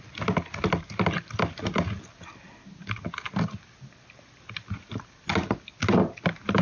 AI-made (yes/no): no